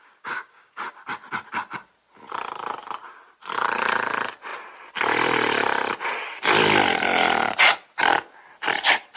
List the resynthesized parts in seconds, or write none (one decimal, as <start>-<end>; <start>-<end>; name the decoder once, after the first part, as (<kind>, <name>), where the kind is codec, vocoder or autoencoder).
0.0-1.0 (codec, DAC)